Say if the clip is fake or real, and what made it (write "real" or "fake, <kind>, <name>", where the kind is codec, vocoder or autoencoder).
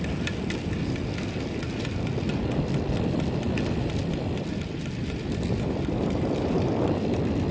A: real